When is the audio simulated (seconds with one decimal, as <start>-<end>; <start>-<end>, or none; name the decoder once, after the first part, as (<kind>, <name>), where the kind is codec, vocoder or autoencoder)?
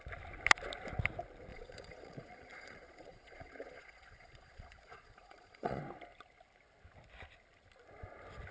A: 1.5-5.8 (vocoder, Vocos)